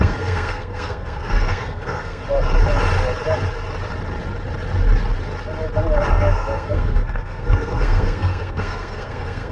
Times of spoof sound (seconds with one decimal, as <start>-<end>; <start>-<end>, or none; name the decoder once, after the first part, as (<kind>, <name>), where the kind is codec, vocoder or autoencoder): 0.0-2.2 (codec, SNAC); 6.1-9.5